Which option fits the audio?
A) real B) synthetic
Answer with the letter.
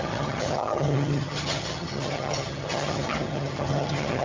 B